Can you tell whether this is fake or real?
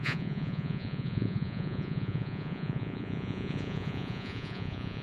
fake